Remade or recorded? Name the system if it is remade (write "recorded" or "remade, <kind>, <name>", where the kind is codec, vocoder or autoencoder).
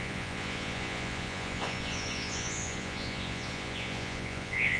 remade, vocoder, Vocos